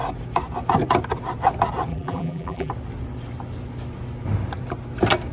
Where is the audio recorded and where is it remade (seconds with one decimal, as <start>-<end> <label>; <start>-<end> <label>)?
0.0-1.9 recorded; 1.9-2.7 remade; 2.7-5.3 recorded

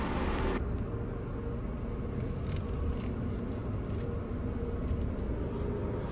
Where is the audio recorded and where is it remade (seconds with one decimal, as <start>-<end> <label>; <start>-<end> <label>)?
0.0-6.1 recorded

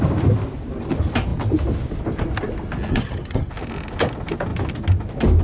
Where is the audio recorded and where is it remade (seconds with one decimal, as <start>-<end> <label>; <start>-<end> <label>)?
0.0-2.9 recorded; 2.9-3.5 remade; 3.5-5.4 recorded

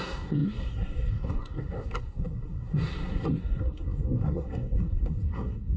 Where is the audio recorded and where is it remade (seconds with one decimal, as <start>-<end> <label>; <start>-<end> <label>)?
0.0-5.8 remade

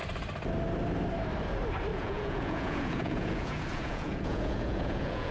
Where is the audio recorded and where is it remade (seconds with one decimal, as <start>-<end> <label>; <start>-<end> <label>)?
0.0-1.9 recorded; 1.9-5.3 remade

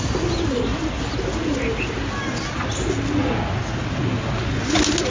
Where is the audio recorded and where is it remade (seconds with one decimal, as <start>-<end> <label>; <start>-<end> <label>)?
0.0-5.1 recorded